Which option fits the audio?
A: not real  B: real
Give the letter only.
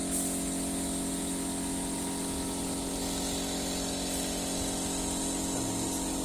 B